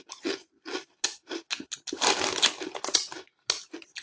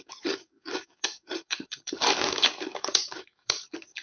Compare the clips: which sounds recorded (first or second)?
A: first